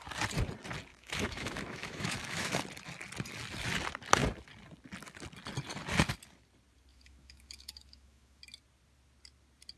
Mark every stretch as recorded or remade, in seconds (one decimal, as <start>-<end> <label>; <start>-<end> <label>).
0.0-0.9 recorded; 0.9-2.6 remade; 2.6-6.9 recorded; 6.9-8.4 remade; 8.4-9.8 recorded